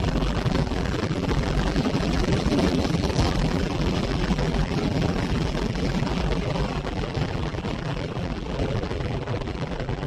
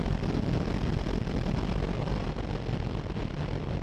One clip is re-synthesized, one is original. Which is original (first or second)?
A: second